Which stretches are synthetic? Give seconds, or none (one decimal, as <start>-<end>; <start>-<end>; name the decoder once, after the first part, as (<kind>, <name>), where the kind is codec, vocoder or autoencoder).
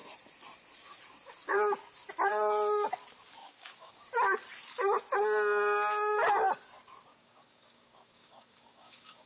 3.4-3.9 (codec, DAC); 7.1-9.3